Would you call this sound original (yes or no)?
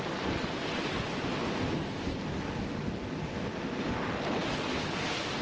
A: no